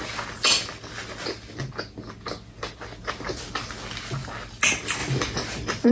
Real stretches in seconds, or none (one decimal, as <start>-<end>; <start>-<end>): 0.0-5.9